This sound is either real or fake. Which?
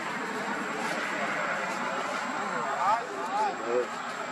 real